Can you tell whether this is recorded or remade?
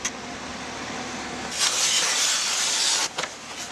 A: recorded